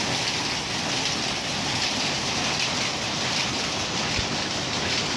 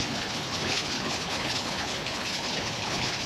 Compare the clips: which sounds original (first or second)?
first